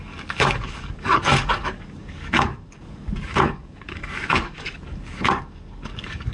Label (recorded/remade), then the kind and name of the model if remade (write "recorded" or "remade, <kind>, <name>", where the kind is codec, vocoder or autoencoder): remade, codec, DAC